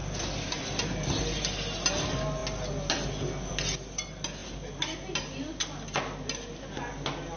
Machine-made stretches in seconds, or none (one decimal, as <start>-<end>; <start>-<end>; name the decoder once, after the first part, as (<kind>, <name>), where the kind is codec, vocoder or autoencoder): none